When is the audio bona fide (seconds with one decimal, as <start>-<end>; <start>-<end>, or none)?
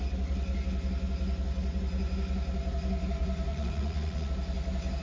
0.0-3.5; 4.3-5.0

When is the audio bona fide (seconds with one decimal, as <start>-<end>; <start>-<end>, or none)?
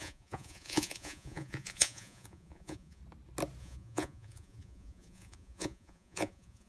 3.0-3.6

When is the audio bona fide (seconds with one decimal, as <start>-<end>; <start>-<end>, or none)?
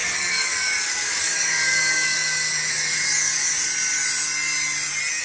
3.7-5.2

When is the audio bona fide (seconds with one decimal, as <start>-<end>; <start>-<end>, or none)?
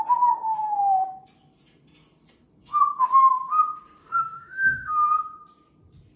0.0-4.0; 5.1-6.2